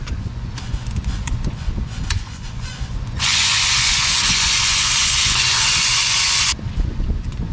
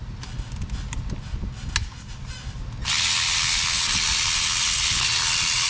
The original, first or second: second